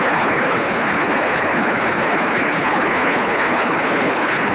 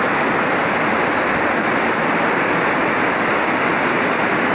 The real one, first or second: second